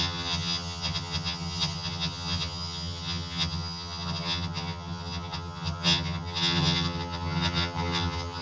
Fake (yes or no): yes